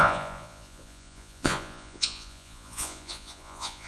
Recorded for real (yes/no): no